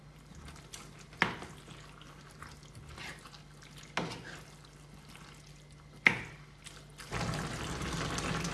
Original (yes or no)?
yes